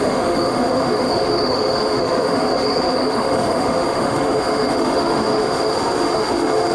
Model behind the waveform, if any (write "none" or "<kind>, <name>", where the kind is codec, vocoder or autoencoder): autoencoder, DAC-VAE